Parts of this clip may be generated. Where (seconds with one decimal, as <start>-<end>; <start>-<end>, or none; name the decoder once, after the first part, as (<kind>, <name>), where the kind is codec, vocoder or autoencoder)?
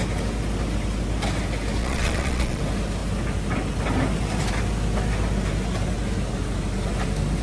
1.8-2.6 (vocoder, Vocos)